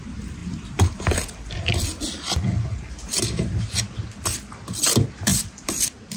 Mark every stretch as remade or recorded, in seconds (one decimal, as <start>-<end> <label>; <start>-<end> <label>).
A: 0.0-0.4 recorded; 0.4-1.8 remade; 1.8-5.3 recorded; 5.3-6.2 remade